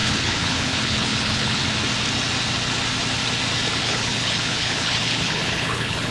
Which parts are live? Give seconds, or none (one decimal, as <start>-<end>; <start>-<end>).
1.6-3.8